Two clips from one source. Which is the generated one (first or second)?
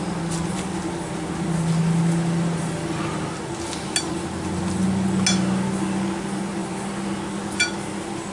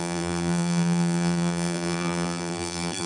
second